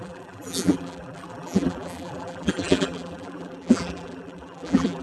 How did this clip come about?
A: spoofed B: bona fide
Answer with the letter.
A